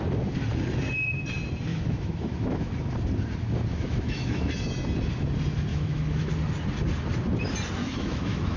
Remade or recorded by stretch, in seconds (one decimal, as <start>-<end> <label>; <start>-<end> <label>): 0.0-1.7 recorded; 1.7-2.7 remade; 2.7-3.7 recorded; 3.7-4.5 remade; 4.5-5.7 recorded; 5.7-6.3 remade; 6.3-7.8 recorded; 7.8-8.6 remade

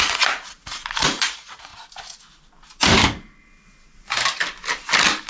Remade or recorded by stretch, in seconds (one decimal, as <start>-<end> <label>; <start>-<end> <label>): 0.0-1.7 remade; 1.7-5.3 recorded

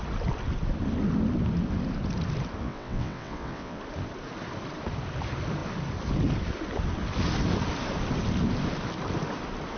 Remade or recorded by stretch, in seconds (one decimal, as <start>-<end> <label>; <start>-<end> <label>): 0.0-2.6 recorded; 2.6-3.8 remade; 3.8-9.8 recorded

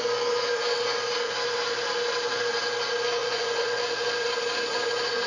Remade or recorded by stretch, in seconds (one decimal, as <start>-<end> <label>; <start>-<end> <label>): 0.0-3.2 recorded; 3.2-3.7 remade; 3.7-5.3 recorded

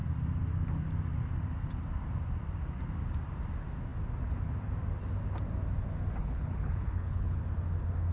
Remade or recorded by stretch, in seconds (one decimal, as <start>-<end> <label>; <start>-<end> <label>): 0.0-6.2 recorded; 6.2-7.4 remade; 7.4-8.1 recorded

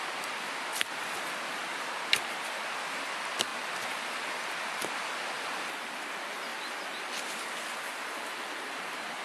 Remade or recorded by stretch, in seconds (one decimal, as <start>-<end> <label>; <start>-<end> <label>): 0.0-0.7 recorded; 0.7-1.8 remade; 1.8-3.5 recorded; 3.5-5.7 remade; 5.7-6.5 recorded; 6.5-7.1 remade; 7.1-9.2 recorded

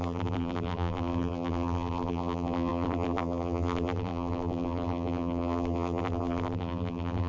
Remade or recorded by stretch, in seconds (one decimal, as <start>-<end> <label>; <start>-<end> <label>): 0.0-7.3 remade